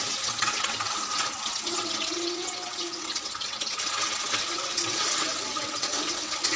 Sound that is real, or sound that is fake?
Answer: fake